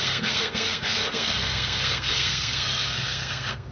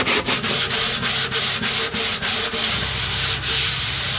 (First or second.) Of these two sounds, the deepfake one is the first